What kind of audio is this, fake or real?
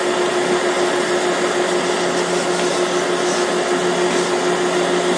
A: real